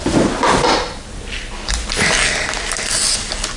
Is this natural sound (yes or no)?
yes